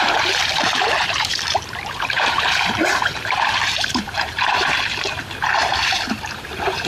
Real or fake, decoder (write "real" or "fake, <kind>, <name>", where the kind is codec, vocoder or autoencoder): fake, vocoder, BigVGAN v2